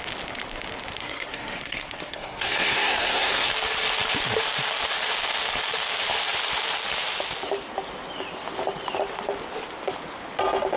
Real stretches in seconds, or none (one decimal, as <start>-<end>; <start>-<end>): 0.0-1.0; 3.5-10.8